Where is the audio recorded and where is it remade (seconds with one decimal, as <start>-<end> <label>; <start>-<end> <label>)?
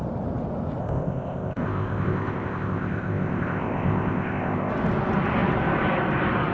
0.0-0.8 recorded; 0.8-4.7 remade; 4.7-6.5 recorded